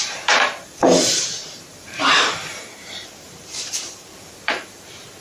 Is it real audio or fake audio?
fake